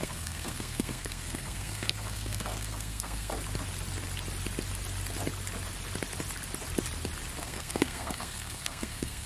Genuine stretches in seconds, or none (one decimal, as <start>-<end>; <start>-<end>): 3.3-7.4

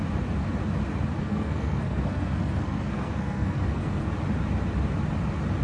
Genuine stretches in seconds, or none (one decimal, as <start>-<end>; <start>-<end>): 0.0-1.2; 4.1-5.6

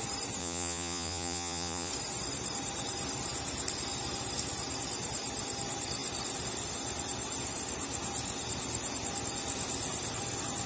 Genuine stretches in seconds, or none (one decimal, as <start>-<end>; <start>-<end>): 0.0-0.4; 1.9-10.7

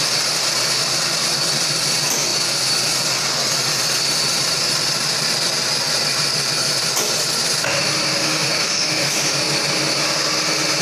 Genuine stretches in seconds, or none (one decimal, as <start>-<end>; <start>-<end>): 0.0-8.2; 9.4-10.8

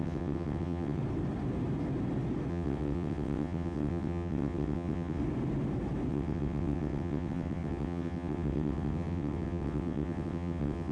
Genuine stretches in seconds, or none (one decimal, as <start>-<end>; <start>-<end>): 1.0-2.5; 5.2-6.1

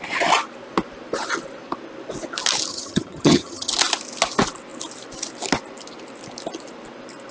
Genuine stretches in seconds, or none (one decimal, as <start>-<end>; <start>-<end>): 0.0-2.7; 3.7-7.3

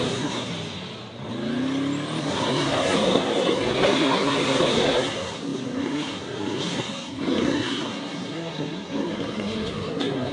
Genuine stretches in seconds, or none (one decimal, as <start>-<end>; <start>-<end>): 0.5-2.2